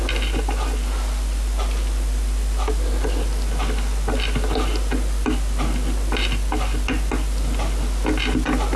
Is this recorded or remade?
recorded